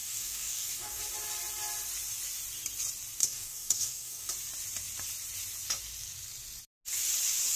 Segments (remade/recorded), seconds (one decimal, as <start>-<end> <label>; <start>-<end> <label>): 0.0-1.0 remade; 1.0-3.2 recorded; 3.2-4.3 remade; 4.3-7.6 recorded